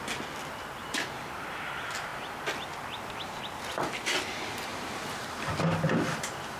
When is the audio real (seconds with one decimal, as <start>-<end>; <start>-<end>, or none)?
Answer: 0.0-0.8; 1.4-4.7; 5.5-6.6